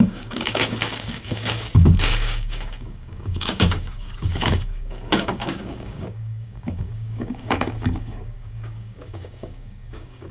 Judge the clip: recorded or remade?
remade